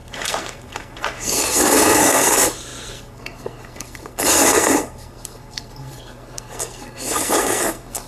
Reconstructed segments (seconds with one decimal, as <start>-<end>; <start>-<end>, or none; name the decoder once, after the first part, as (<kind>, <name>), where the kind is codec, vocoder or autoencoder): 0.0-8.1 (codec, SNAC)